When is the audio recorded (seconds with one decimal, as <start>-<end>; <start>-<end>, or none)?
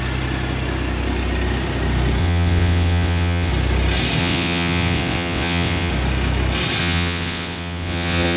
0.0-2.2; 3.5-4.2; 5.9-6.8